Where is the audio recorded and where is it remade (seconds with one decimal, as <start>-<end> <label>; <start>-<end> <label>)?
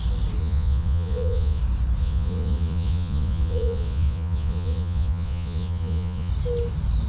0.0-0.4 recorded; 0.4-1.6 remade; 1.6-2.0 recorded; 2.0-6.3 remade; 6.3-7.1 recorded